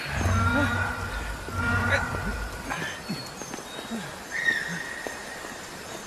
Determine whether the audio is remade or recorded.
recorded